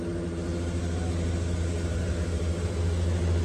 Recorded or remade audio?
recorded